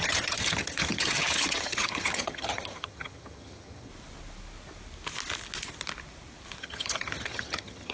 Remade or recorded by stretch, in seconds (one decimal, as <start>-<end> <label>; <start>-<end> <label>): 0.0-3.9 remade; 3.9-6.6 recorded; 6.6-7.9 remade